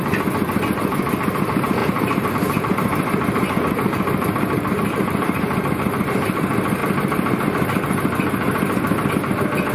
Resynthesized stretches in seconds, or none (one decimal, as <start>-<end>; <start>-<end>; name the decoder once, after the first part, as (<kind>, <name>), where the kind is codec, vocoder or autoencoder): none